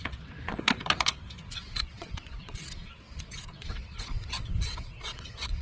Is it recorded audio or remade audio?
remade